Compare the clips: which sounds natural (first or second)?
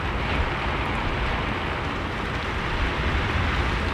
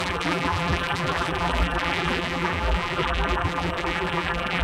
first